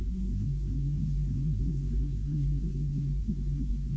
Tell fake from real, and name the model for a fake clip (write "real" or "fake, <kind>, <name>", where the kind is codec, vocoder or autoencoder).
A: fake, codec, SNAC